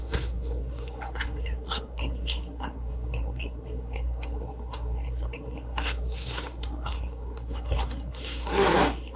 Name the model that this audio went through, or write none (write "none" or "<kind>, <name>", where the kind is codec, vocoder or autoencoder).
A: codec, SNAC